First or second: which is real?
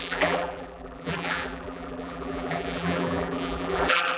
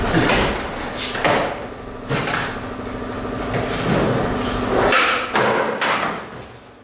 second